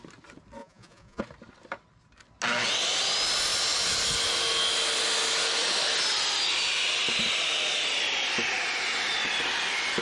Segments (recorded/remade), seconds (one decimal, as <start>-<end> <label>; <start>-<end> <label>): 0.0-0.6 recorded; 0.6-1.2 remade; 1.2-10.0 recorded